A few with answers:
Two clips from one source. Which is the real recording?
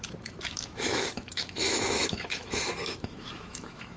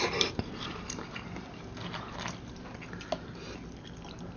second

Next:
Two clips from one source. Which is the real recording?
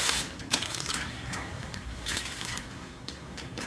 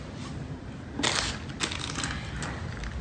second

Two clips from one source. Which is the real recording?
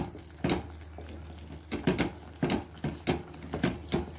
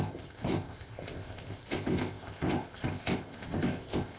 first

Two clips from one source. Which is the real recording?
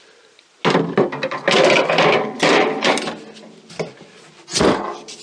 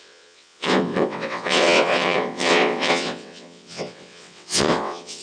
first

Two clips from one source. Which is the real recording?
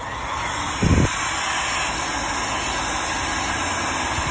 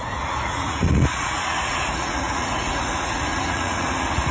first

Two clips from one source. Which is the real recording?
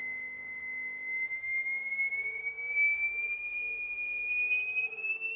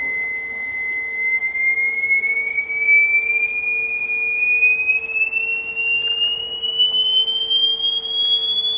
second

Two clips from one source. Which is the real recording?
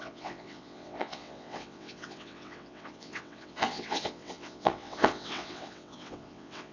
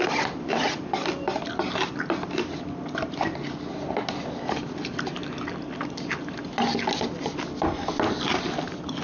second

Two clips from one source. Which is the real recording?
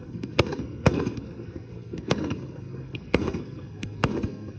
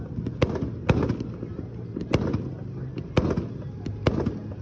second